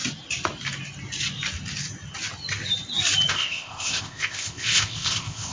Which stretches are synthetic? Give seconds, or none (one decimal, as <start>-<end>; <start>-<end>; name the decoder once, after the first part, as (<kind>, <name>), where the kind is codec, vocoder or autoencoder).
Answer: 3.3-5.5 (codec, ZipCodec)